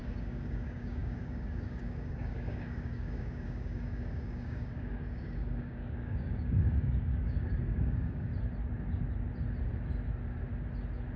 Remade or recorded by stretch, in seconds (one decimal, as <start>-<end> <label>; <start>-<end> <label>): 0.0-8.3 remade; 8.3-11.2 recorded